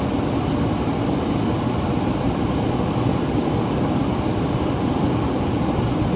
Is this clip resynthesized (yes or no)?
no